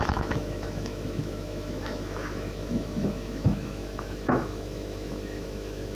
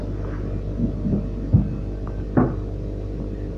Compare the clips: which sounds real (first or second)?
second